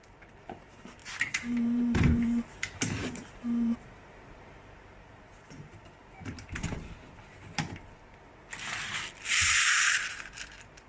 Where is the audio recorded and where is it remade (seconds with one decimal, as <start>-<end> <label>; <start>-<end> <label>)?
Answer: 0.0-6.0 remade; 6.0-9.3 recorded; 9.3-10.9 remade